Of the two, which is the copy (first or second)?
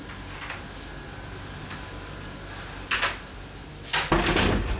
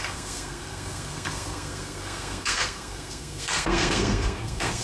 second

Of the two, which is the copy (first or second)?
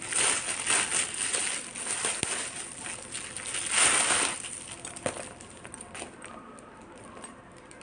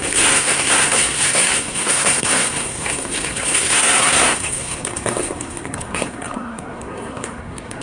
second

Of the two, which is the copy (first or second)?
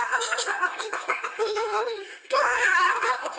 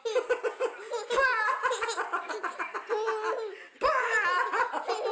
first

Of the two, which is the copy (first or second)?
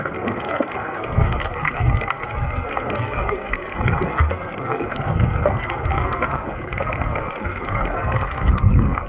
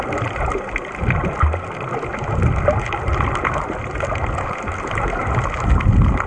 first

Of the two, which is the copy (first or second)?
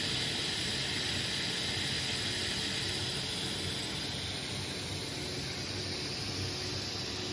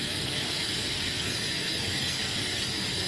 second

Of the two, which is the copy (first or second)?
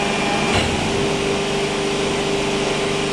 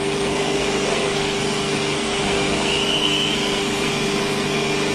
second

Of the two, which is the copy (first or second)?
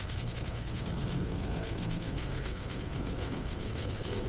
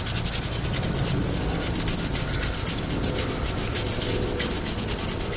first